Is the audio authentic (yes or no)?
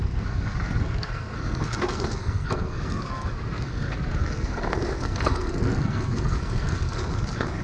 no